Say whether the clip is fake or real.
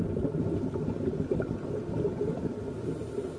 real